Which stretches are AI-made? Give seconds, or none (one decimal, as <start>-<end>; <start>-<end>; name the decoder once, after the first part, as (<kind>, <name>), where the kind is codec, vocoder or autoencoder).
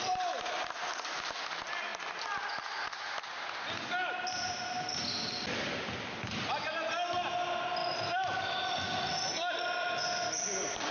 none